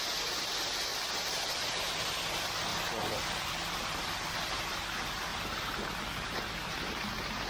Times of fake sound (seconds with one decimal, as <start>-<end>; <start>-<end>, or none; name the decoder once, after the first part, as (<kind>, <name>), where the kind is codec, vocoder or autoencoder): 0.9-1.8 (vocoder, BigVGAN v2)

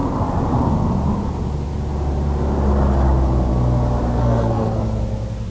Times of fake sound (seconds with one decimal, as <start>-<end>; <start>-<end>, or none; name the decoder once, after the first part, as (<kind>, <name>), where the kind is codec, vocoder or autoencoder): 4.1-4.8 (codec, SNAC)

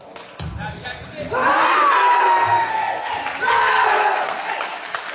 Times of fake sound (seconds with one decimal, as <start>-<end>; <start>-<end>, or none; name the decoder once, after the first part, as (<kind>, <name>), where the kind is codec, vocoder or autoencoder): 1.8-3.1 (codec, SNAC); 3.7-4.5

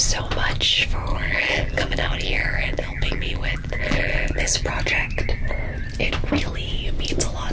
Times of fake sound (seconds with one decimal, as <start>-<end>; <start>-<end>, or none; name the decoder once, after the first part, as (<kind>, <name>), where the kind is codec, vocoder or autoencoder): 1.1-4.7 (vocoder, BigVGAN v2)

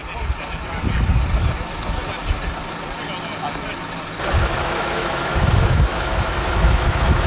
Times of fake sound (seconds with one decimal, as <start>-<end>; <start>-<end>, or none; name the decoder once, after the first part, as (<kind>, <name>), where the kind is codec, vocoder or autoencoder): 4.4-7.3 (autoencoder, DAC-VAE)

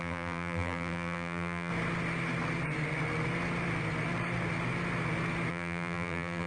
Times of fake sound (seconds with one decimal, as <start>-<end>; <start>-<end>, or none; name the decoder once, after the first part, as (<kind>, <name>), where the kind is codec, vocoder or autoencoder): 0.0-1.7 (vocoder, BigVGAN v2); 5.5-6.5

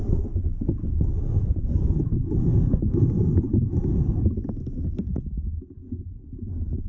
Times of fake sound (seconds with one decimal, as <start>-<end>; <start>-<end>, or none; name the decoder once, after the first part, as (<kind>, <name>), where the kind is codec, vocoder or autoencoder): 2.5-4.6 (vocoder, BigVGAN v2)

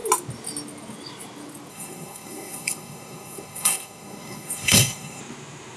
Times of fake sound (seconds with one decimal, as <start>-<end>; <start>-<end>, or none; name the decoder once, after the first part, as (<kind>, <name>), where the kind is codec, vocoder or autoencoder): 1.7-5.2 (codec, SNAC)